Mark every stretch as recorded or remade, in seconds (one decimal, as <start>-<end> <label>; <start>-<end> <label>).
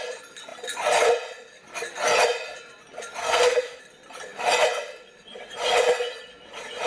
0.0-3.2 recorded; 3.2-3.8 remade; 3.8-6.9 recorded